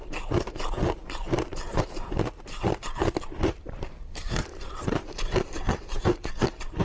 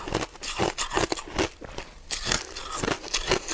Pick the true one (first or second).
second